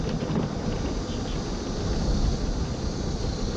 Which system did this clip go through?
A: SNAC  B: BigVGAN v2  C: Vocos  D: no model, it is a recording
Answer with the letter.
D